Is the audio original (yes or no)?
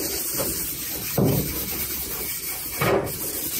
yes